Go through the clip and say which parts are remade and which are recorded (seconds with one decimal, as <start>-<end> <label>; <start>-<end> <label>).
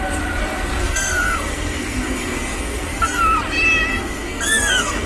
0.0-0.8 recorded; 0.8-3.2 remade; 3.2-3.9 recorded; 3.9-5.1 remade